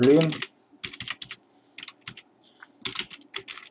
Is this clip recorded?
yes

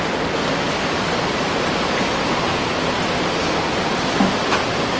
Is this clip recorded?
yes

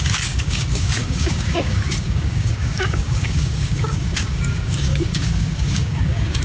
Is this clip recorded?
no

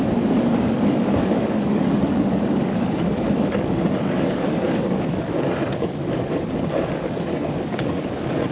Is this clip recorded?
no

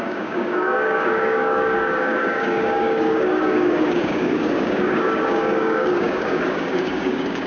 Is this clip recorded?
no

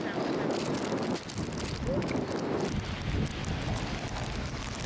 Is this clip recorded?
yes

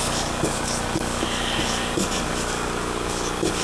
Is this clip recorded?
no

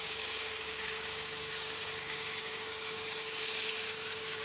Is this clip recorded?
no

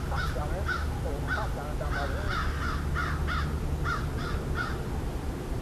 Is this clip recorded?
yes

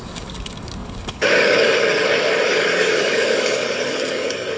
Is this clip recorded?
no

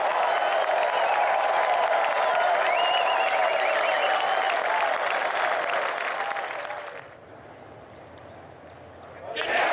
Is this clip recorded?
yes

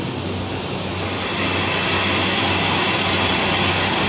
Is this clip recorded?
yes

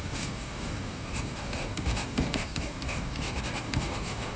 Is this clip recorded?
no